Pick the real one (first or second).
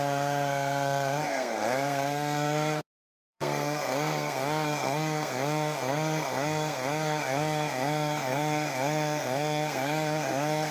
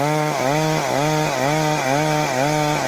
second